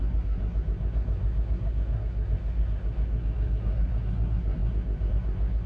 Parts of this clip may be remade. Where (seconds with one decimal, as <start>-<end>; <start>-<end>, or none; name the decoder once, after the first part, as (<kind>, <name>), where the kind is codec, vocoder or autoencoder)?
0.0-5.7 (codec, SNAC)